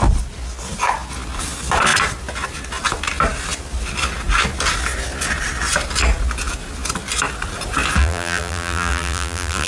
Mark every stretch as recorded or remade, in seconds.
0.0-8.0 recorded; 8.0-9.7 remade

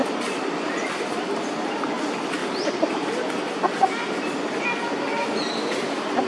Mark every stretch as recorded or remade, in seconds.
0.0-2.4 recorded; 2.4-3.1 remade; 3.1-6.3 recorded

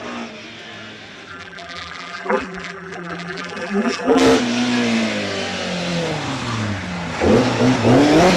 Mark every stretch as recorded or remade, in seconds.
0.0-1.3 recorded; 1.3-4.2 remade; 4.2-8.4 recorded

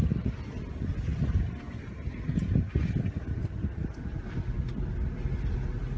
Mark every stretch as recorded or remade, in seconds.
0.0-3.4 recorded; 3.4-4.0 remade; 4.0-6.0 recorded